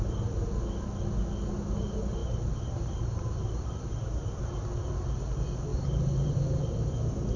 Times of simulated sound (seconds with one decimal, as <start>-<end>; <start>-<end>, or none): 2.2-3.8; 5.7-6.6